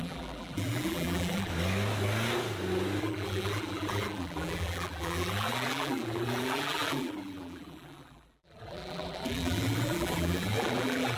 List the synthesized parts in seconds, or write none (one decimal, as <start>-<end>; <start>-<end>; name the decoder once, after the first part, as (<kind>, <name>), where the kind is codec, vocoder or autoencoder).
0.0-1.5 (vocoder, BigVGAN v2); 3.0-11.2